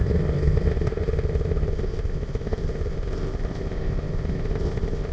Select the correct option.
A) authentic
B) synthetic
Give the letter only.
B